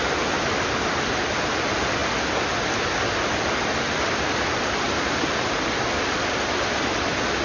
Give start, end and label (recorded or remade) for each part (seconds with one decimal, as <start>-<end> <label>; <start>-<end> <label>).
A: 0.0-7.4 recorded